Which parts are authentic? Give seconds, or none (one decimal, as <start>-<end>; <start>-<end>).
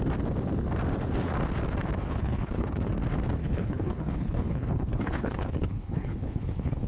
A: 0.0-2.0; 2.9-3.4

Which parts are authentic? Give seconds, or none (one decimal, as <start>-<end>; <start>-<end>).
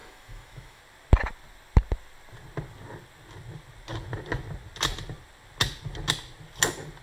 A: 0.8-7.0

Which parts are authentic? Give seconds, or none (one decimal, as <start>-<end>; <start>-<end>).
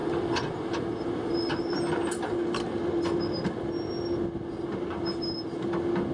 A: 0.0-6.1